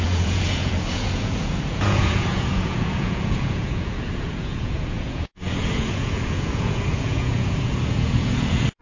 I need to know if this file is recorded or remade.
remade